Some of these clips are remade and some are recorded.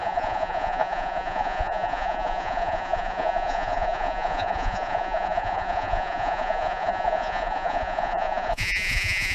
remade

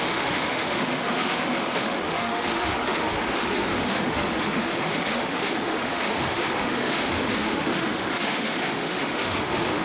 remade